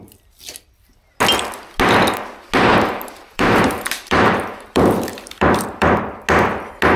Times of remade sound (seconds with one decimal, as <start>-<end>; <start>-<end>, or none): 2.7-6.0